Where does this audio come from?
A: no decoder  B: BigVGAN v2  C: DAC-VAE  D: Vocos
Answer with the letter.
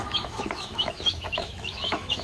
C